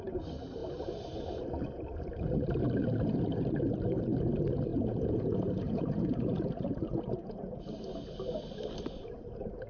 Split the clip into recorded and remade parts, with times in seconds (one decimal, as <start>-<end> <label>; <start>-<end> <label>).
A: 0.0-4.7 recorded; 4.7-7.6 remade; 7.6-9.7 recorded